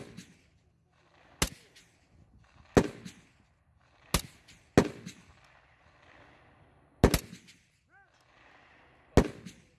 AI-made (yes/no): no